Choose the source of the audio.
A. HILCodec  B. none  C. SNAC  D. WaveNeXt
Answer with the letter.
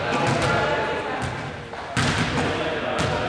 B